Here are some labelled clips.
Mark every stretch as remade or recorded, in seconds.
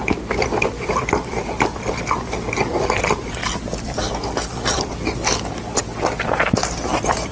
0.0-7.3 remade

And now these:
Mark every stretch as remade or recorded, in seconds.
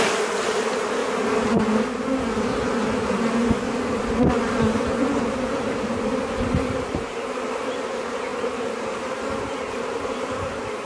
0.0-1.0 remade; 1.0-4.5 recorded; 4.5-10.9 remade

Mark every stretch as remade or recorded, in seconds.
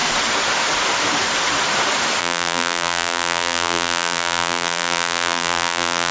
0.0-2.2 recorded; 2.2-6.1 remade